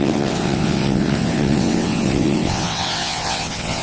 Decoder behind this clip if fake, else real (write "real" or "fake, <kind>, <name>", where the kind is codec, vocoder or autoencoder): fake, vocoder, WaveNeXt